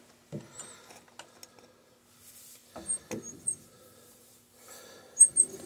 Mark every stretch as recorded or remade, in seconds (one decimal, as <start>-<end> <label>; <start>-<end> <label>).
0.0-5.7 recorded